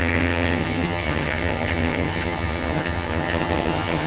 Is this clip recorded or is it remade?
remade